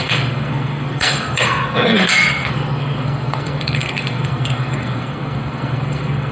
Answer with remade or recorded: remade